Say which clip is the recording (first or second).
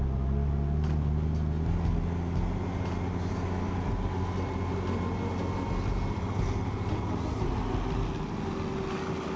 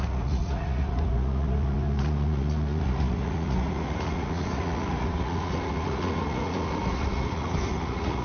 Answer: first